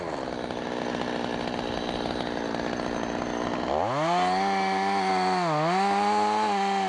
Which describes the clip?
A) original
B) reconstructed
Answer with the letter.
A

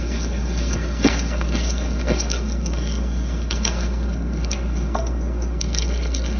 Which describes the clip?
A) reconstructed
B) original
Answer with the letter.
A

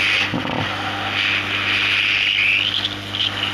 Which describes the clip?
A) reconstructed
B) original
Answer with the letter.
B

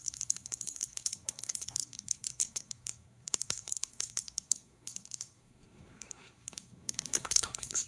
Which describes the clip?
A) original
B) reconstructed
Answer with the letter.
B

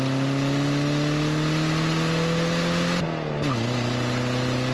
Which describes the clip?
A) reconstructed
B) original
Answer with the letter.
B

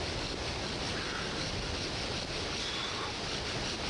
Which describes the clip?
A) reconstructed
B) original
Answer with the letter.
B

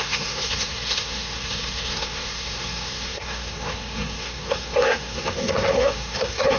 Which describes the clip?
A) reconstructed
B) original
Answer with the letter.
A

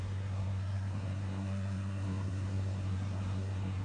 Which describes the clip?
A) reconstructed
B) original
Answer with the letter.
A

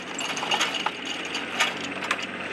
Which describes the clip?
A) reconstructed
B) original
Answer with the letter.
B